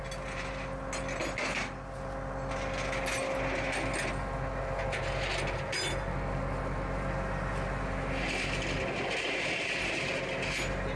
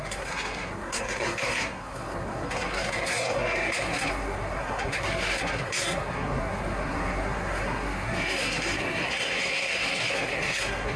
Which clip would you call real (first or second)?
first